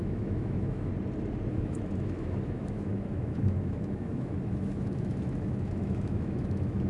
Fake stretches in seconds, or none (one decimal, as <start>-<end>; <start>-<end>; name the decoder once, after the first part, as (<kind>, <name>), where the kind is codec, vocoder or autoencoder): 0.0-0.9 (autoencoder, DAC-VAE); 1.5-6.9